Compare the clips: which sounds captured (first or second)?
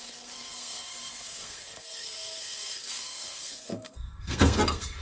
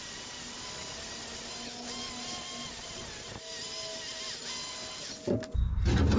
second